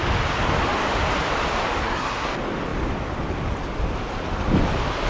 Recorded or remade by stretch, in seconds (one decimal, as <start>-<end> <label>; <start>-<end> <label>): 0.0-1.8 recorded; 1.8-2.3 remade; 2.3-5.1 recorded